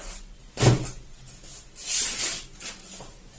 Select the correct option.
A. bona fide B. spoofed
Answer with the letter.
A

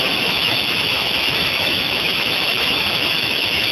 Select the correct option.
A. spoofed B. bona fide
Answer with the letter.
A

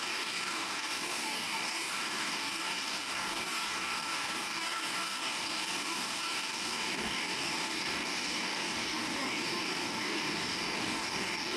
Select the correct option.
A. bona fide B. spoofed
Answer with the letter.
B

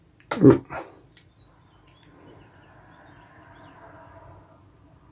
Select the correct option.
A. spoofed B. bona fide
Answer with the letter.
B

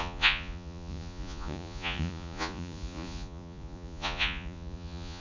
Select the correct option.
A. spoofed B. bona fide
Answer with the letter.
A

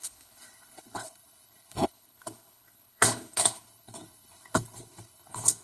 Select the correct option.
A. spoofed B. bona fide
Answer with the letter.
A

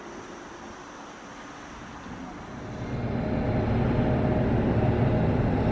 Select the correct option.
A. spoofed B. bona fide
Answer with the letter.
B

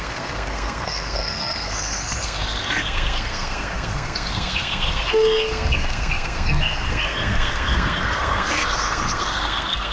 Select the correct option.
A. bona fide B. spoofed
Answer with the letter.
B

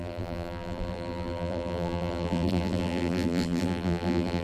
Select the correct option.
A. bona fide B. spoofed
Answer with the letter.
B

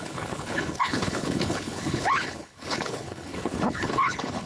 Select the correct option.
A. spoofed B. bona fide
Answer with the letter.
A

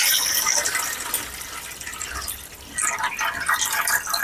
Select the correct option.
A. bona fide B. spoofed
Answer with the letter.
B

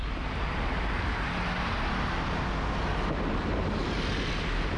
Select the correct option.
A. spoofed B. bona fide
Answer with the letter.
B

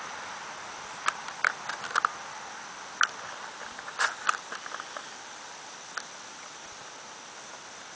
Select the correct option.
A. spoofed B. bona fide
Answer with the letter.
B